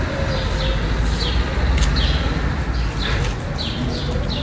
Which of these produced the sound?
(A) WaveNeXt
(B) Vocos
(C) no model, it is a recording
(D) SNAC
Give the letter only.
C